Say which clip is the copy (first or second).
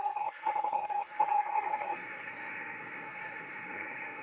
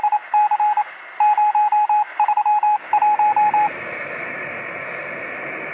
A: first